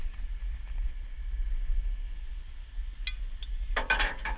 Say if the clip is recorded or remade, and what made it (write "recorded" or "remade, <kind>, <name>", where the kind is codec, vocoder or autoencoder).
recorded